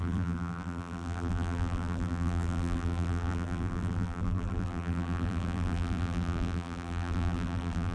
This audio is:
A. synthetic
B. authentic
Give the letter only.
A